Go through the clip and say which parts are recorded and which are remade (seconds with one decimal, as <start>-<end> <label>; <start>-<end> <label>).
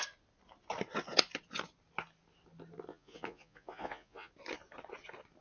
0.0-2.9 recorded; 2.9-4.3 remade; 4.3-5.4 recorded